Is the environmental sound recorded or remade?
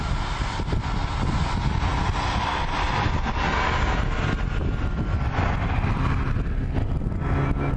recorded